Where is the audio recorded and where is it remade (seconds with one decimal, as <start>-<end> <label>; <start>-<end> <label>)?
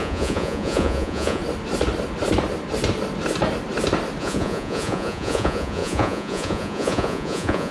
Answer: 0.0-1.4 remade; 1.4-4.2 recorded; 4.2-7.7 remade